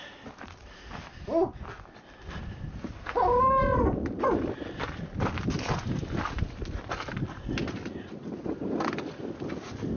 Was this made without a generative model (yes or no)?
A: yes